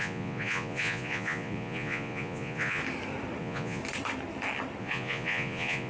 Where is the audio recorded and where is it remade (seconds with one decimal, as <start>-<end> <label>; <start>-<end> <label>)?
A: 0.0-2.8 remade; 2.8-3.4 recorded; 3.4-3.8 remade; 3.8-4.8 recorded; 4.8-5.9 remade